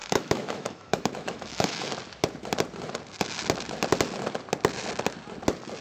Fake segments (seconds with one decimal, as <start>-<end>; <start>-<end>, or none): 0.0-1.9